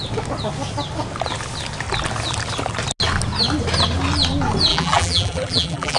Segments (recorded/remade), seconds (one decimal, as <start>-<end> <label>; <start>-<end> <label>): 0.0-4.7 recorded; 4.7-6.0 remade